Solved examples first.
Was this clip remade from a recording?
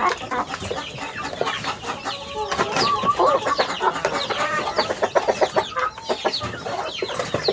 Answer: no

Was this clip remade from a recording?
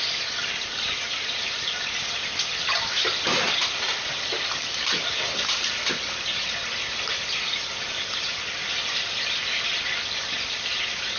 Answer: no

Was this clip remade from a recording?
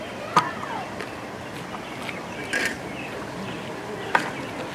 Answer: no